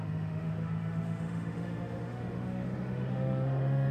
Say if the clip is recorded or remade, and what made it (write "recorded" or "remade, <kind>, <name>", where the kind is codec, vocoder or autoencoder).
remade, autoencoder, DAC-VAE